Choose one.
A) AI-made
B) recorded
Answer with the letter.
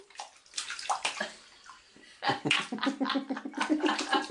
B